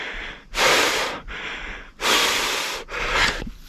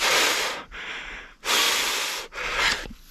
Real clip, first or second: second